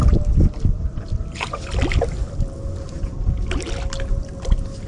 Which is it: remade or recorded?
recorded